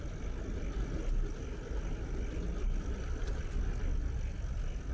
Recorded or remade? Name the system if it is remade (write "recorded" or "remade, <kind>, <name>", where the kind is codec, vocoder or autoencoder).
recorded